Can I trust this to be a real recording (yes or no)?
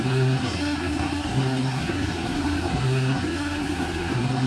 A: no